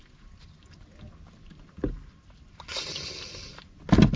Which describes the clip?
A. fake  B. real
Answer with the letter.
B